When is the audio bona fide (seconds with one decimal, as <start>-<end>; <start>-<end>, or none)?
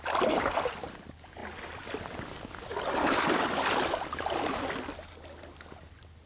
0.0-6.3